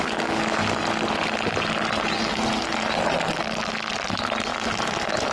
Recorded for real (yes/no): yes